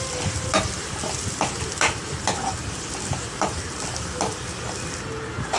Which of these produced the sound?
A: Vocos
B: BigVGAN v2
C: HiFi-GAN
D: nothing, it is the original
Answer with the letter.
D